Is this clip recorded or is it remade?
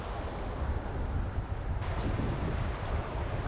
recorded